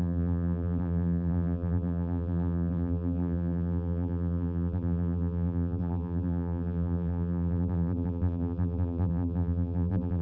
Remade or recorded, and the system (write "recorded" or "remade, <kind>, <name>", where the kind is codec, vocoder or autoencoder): remade, vocoder, BigVGAN v2